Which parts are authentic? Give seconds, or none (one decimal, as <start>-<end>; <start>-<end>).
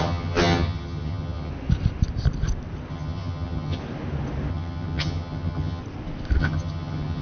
1.5-2.9; 3.8-4.5; 5.8-6.4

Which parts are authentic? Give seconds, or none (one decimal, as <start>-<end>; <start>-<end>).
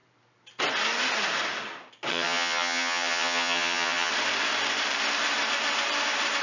0.0-2.1; 4.1-6.4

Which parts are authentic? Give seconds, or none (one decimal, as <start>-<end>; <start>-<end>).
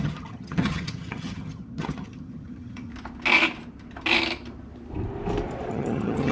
2.9-5.7